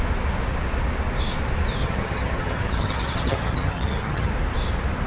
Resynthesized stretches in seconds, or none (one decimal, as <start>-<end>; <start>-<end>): 1.8-4.3